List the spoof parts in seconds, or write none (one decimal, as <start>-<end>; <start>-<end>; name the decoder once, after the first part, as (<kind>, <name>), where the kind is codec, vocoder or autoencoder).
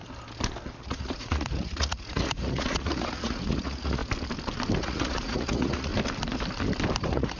0.8-4.0 (vocoder, Vocos); 4.8-5.9; 7.0-7.4